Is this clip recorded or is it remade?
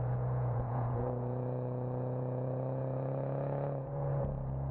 remade